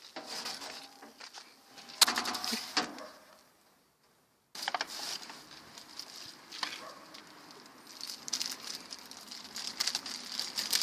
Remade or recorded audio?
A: recorded